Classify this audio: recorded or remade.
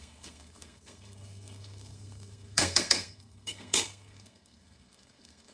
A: remade